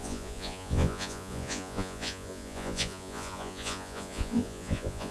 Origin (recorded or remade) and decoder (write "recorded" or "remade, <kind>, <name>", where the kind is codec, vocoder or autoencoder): remade, vocoder, Vocos